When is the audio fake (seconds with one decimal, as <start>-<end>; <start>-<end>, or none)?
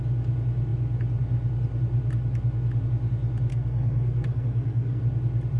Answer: 3.5-5.0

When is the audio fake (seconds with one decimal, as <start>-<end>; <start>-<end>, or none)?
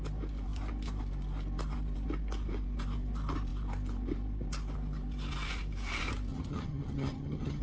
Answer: 6.3-7.6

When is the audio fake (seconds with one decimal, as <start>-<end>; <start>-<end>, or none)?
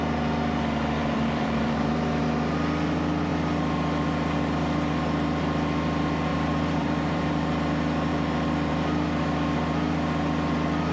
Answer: 1.0-1.9; 6.3-7.3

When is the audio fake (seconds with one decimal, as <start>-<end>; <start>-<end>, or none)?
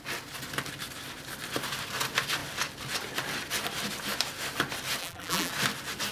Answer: 5.0-5.5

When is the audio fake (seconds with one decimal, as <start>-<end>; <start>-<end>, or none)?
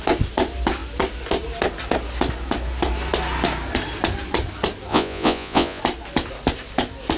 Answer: 4.9-5.8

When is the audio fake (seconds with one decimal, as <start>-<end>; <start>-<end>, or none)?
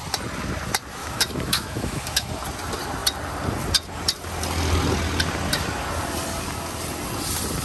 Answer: 1.0-2.3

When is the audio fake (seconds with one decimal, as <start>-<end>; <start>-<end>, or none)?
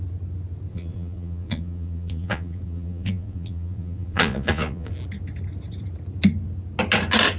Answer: 0.7-4.9